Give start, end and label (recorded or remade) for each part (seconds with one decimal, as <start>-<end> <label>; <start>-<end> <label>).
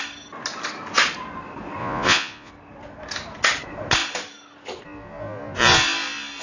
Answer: 0.0-1.8 recorded; 1.8-2.5 remade; 2.5-6.4 recorded